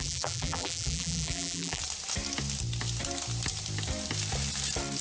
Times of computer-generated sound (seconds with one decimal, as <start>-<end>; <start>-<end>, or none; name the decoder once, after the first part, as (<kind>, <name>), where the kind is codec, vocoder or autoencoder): 0.0-1.8 (vocoder, BigVGAN v2)